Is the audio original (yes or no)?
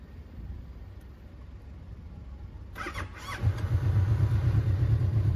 yes